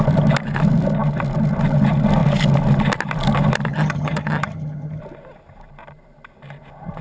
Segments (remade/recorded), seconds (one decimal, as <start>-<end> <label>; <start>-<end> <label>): 0.0-3.7 recorded; 3.7-5.0 remade; 5.0-7.0 recorded